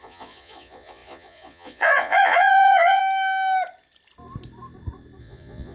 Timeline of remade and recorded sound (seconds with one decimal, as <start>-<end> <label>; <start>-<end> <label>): 0.0-3.0 remade; 3.0-5.2 recorded; 5.2-5.7 remade